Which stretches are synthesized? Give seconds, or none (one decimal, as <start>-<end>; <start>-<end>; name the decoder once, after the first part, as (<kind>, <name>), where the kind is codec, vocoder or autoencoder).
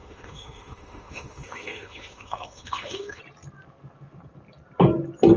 0.0-3.2 (autoencoder, DAC-VAE)